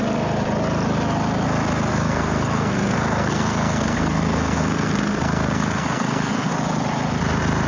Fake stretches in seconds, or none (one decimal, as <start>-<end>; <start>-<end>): 1.9-6.5